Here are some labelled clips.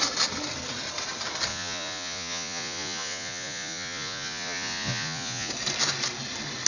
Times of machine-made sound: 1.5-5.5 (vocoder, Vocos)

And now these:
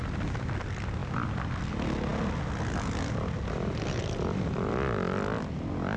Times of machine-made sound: none

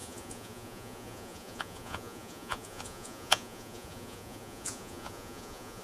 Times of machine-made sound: 0.0-5.8 (vocoder, Vocos)

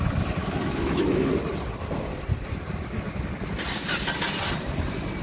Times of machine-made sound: 0.4-1.3 (autoencoder, DAC-VAE)

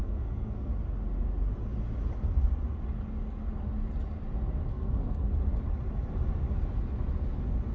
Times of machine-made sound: 0.0-0.7 (codec, SNAC); 4.7-5.3